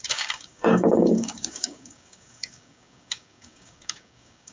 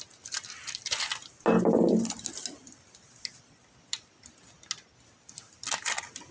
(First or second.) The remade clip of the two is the first